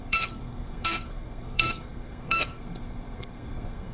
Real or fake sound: fake